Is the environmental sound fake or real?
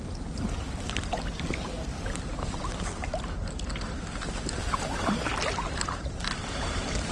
real